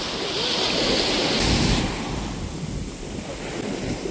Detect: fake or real real